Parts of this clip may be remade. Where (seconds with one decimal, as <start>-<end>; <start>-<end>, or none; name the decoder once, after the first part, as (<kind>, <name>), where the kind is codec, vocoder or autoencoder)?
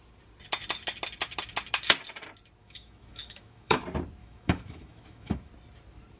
2.6-3.8 (autoencoder, DAC-VAE); 4.2-5.5